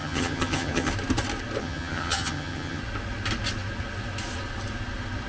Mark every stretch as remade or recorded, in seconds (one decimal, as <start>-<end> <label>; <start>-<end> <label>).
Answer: 0.0-0.9 remade; 0.9-1.6 recorded; 1.6-2.8 remade; 2.8-5.3 recorded